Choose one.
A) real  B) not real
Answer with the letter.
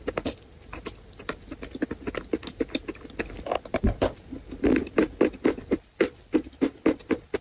A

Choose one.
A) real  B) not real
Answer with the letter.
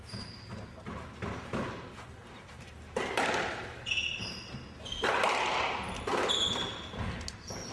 A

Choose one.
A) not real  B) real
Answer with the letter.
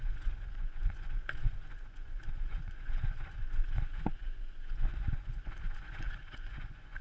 A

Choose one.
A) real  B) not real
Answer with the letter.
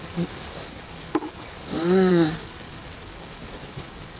B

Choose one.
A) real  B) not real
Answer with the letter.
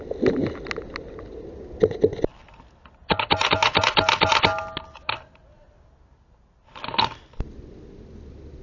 A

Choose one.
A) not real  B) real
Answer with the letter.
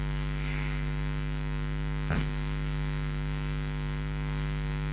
A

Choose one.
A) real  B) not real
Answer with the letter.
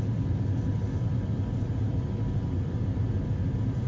B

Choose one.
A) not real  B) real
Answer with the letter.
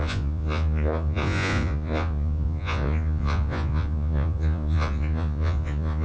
A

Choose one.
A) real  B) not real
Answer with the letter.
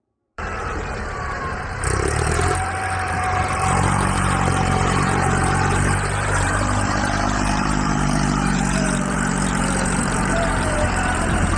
B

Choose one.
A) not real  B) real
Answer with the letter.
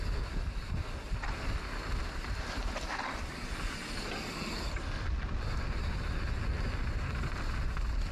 B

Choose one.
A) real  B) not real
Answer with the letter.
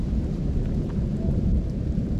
B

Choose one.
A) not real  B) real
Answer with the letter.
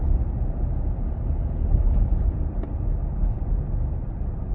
B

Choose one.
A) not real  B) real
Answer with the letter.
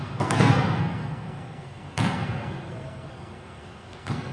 A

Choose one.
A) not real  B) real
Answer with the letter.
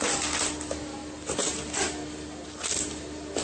B